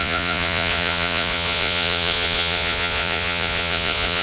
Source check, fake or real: fake